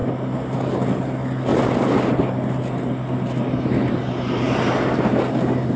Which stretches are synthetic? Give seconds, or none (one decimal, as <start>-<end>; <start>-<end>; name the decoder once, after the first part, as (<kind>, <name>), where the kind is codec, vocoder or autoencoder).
none